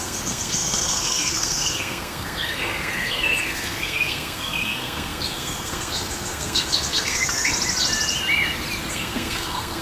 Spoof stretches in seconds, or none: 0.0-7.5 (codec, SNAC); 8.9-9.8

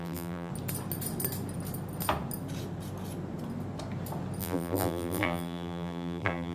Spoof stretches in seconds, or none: 0.0-0.5 (vocoder, BigVGAN v2); 4.4-6.5